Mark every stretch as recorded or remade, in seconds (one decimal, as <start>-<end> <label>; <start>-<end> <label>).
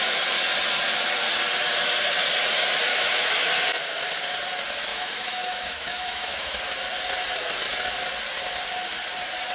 0.0-2.9 recorded; 2.9-3.5 remade; 3.5-4.9 recorded; 4.9-6.6 remade; 6.6-9.5 recorded